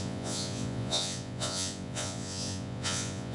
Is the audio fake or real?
fake